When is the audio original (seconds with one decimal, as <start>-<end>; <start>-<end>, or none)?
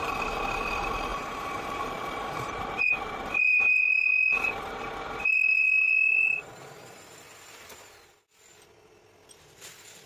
0.0-1.1; 2.8-10.1